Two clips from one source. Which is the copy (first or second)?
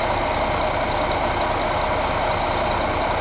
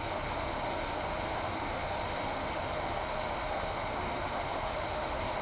second